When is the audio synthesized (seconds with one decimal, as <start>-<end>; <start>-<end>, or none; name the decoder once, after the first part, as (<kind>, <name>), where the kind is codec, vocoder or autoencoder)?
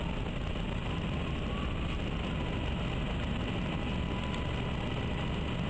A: none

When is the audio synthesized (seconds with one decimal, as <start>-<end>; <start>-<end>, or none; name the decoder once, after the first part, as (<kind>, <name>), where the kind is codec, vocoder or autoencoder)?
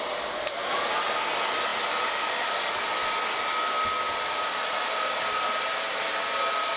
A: none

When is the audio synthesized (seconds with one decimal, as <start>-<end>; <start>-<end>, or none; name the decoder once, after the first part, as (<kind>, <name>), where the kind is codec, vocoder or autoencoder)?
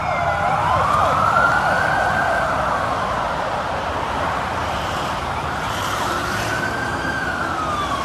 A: 4.6-7.4 (vocoder, BigVGAN v2)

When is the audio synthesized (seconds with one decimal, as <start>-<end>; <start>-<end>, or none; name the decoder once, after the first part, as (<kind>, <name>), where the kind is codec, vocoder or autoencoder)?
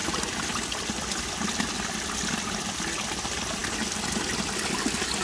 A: none